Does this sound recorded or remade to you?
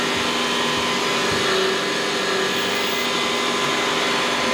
recorded